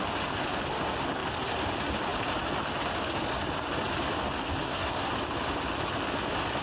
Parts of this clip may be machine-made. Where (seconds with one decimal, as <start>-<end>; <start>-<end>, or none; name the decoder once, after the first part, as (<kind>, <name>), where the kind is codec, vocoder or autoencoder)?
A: 4.6-5.1 (codec, SNAC)

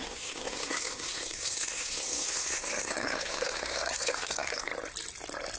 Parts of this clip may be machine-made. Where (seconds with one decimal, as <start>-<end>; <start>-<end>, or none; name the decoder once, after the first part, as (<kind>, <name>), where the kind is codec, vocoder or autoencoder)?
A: 0.0-4.7 (codec, SNAC)

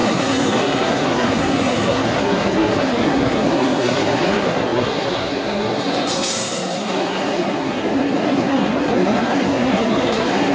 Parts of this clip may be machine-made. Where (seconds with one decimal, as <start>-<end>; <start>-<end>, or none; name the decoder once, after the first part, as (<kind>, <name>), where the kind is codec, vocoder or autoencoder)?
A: 0.0-10.5 (codec, SNAC)

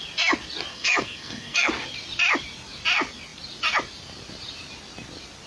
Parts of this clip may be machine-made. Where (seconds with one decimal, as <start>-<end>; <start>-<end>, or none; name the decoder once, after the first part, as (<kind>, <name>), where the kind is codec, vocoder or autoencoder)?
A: 0.7-1.7 (codec, SNAC)

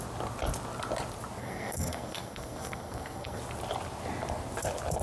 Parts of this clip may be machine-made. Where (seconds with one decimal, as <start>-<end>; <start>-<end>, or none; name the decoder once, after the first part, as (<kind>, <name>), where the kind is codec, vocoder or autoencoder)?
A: 1.4-3.4 (codec, SNAC)